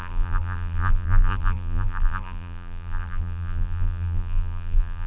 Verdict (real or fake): fake